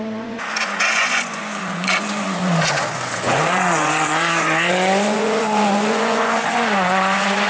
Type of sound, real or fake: fake